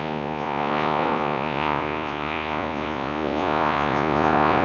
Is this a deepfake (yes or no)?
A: yes